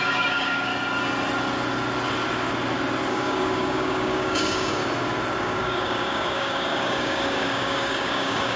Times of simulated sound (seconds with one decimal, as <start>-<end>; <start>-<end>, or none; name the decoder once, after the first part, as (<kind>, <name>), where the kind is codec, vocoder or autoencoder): 0.0-0.7 (codec, DAC); 3.1-4.8; 5.4-8.6